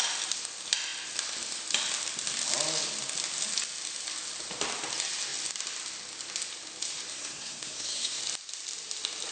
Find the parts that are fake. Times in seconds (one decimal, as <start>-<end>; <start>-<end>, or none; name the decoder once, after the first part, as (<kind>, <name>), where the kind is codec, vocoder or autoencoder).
7.1-8.2 (codec, SNAC)

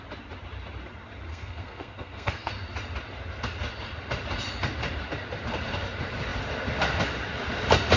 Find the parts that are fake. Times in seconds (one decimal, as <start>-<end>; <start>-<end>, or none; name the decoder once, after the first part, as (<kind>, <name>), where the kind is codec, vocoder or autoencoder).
1.3-2.5 (codec, SNAC)

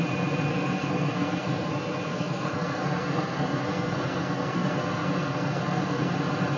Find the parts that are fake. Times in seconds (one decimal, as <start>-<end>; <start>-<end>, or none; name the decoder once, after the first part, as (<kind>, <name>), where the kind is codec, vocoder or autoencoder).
0.5-1.7 (codec, SNAC); 2.1-6.1

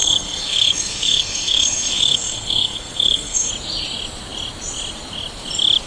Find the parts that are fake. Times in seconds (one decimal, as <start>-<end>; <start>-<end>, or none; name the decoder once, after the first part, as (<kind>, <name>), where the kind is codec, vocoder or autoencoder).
0.0-3.5 (codec, SNAC)

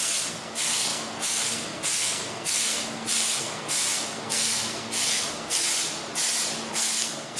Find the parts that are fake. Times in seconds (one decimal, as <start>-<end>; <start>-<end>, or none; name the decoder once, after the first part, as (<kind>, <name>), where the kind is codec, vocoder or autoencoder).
0.0-5.7 (codec, SNAC); 6.7-7.4

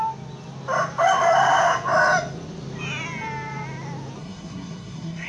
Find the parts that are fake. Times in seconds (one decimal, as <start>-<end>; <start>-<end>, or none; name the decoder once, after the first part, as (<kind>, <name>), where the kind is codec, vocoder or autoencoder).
4.2-5.3 (codec, SNAC)

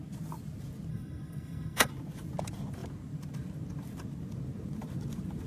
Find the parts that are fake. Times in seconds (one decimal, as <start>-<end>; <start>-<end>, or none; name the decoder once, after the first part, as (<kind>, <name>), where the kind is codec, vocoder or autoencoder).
0.9-1.9 (codec, SNAC)